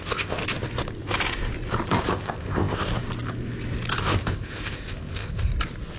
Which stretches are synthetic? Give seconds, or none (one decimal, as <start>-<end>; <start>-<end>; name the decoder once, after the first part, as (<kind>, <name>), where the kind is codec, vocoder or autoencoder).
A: 0.0-0.4 (codec, ZipCodec); 2.1-2.9; 4.0-5.5